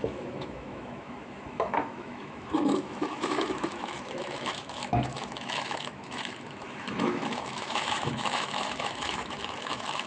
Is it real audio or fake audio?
fake